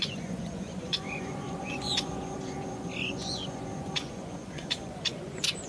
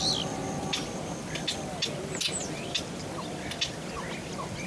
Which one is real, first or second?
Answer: second